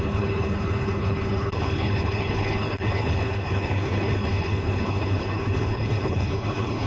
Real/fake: fake